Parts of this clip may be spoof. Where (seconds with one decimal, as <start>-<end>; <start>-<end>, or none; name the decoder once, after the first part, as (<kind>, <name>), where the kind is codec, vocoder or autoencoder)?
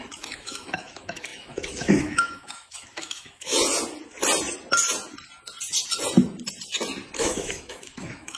0.0-3.5 (autoencoder, DAC-VAE); 7.2-8.4